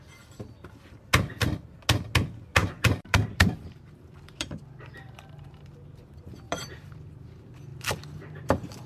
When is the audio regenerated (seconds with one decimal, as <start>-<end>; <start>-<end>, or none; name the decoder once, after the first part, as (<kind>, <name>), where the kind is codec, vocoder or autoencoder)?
2.6-7.3 (vocoder, BigVGAN v2)